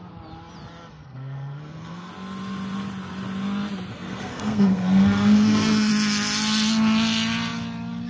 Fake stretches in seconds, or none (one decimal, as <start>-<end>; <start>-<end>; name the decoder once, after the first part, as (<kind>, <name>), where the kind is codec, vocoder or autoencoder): 0.9-2.1 (codec, SNAC); 3.9-5.9